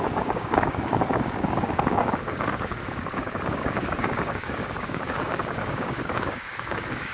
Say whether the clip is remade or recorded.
remade